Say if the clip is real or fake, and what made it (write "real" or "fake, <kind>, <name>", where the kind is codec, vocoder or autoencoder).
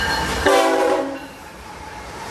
real